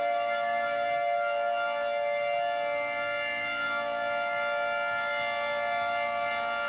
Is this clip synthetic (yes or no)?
no